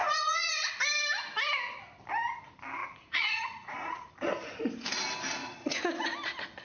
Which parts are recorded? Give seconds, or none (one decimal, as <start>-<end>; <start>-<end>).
0.7-2.8; 4.1-5.4; 6.0-6.6